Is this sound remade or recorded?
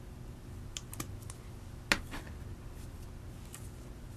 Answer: recorded